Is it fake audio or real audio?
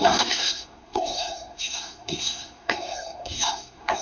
fake